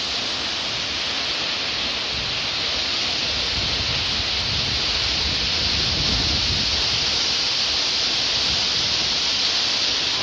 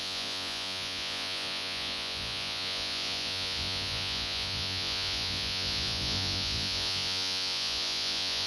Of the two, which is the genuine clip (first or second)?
first